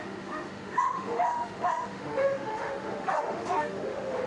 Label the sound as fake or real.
fake